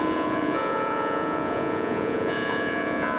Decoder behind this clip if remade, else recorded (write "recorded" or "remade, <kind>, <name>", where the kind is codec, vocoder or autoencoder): remade, vocoder, Vocos